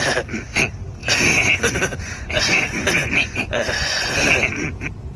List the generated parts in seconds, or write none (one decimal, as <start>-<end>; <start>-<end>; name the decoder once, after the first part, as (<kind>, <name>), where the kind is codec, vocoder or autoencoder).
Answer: 1.0-4.1 (vocoder, Vocos)

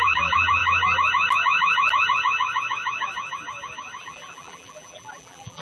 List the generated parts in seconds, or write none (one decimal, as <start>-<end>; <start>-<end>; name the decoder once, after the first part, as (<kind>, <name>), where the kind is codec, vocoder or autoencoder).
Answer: 0.0-0.6 (vocoder, BigVGAN v2); 4.0-5.6

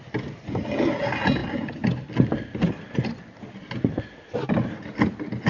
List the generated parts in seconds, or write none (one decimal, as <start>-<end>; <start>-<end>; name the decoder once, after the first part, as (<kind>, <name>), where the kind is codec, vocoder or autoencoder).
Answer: none

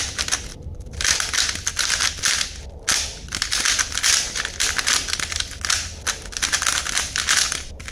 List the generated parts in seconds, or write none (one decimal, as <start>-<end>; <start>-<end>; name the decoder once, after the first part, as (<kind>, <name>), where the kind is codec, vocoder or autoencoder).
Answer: 0.5-1.3 (vocoder, BigVGAN v2)